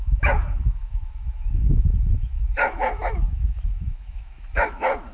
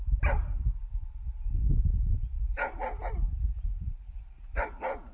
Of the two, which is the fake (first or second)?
first